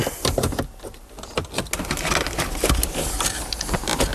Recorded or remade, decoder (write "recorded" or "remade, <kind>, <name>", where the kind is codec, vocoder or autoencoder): recorded